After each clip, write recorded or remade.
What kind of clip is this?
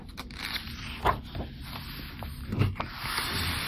recorded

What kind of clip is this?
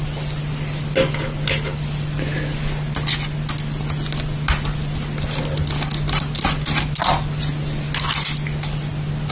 recorded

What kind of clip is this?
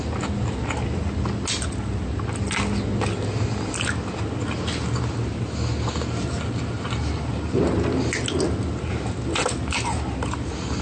recorded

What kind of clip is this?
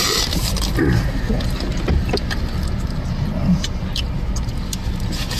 recorded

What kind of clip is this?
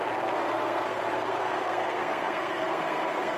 remade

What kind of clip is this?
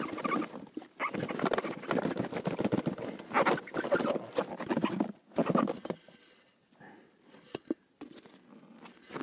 recorded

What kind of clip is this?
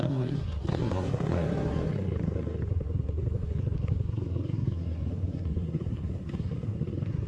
remade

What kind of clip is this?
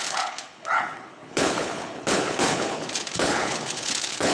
remade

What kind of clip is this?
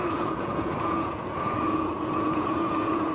remade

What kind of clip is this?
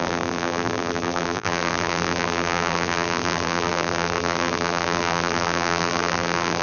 remade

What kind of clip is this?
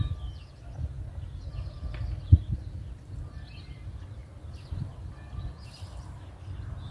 recorded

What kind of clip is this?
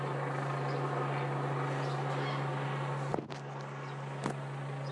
recorded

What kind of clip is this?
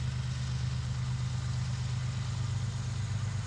recorded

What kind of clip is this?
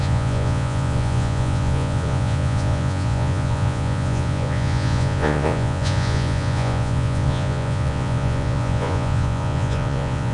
remade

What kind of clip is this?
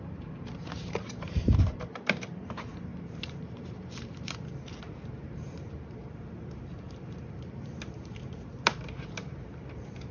remade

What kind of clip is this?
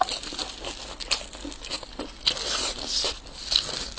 recorded